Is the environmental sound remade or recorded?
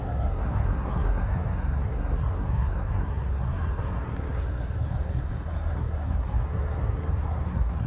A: remade